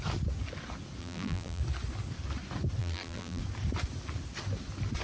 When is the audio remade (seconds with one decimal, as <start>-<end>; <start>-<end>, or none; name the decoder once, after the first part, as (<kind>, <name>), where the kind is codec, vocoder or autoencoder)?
1.0-1.6 (vocoder, BigVGAN v2); 2.8-3.4